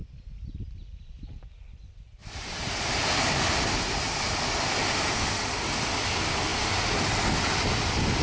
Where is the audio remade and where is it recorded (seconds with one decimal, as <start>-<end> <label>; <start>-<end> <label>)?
0.0-2.2 recorded; 2.2-3.8 remade; 3.8-6.5 recorded; 6.5-7.6 remade; 7.6-8.2 recorded